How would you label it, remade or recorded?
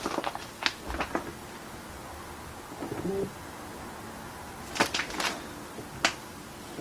remade